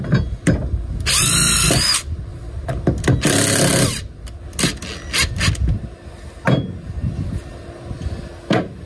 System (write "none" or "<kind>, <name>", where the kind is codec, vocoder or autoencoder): none